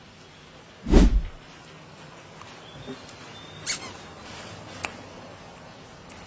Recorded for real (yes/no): yes